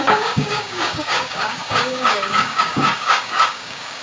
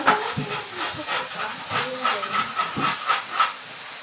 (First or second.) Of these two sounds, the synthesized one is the first